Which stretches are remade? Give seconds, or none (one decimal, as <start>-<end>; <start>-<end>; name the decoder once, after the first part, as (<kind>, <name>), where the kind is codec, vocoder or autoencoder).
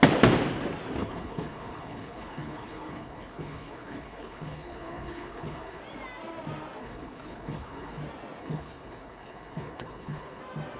1.0-5.8 (codec, HILCodec); 6.8-8.0; 8.4-10.4